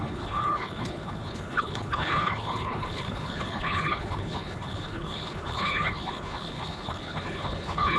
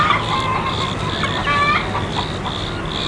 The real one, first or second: second